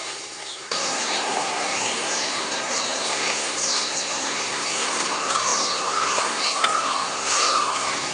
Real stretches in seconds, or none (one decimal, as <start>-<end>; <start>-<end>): none